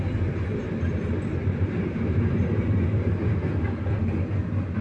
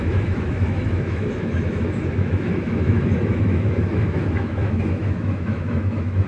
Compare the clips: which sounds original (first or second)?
first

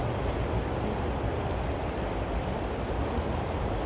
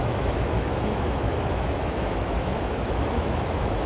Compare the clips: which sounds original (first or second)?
first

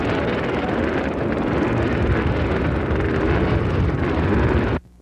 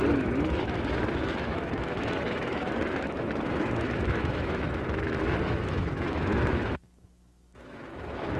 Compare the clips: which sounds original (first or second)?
first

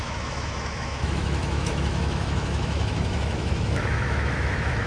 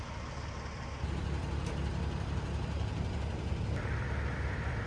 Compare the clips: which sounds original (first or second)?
second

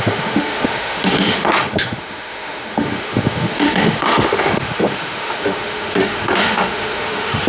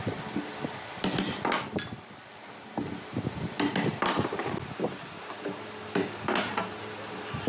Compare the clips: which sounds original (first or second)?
second